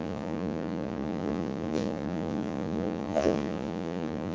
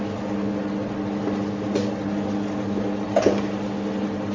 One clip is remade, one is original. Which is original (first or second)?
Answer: second